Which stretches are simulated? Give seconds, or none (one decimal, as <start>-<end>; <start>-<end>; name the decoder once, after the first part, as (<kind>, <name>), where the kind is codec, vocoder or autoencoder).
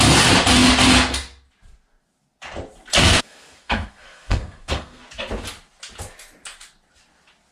3.0-5.0 (codec, SNAC)